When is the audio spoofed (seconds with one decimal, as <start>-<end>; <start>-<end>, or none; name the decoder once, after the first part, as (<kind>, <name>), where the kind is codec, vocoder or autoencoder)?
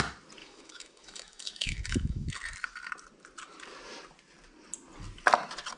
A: 0.4-2.3 (autoencoder, DAC-VAE)